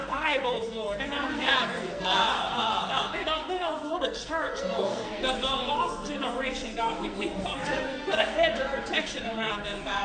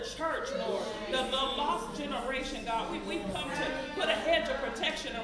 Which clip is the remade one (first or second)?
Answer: first